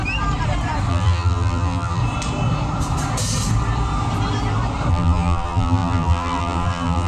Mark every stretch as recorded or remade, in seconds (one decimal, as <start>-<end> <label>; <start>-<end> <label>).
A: 0.0-0.9 recorded; 0.9-2.0 remade; 2.0-4.9 recorded; 4.9-7.1 remade